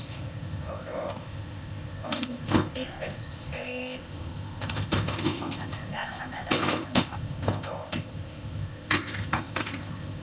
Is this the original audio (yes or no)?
no